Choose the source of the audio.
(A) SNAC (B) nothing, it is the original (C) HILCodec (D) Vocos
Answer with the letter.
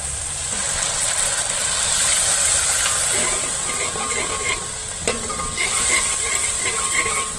B